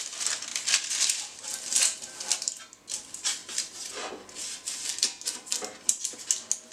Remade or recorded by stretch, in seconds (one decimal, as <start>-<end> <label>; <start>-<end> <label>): 0.0-6.7 recorded